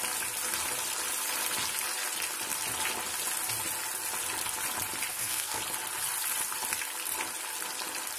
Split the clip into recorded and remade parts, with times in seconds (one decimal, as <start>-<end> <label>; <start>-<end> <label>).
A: 0.0-5.1 recorded; 5.1-5.6 remade; 5.6-8.2 recorded